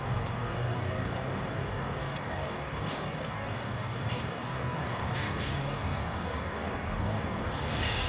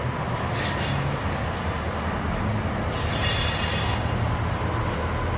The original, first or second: second